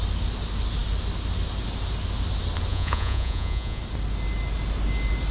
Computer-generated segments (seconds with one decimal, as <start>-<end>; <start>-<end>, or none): 2.7-3.8